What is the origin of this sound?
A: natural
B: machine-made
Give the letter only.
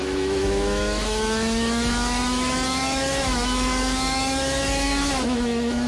B